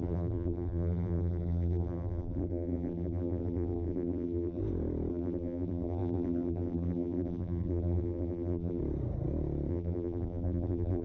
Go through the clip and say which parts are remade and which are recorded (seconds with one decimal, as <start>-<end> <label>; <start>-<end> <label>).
0.0-4.6 remade; 4.6-5.1 recorded; 5.1-8.8 remade; 8.8-9.7 recorded; 9.7-11.0 remade